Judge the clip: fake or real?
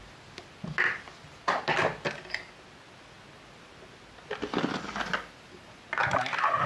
real